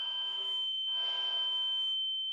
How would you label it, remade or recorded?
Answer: remade